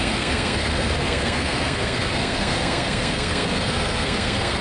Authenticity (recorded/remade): remade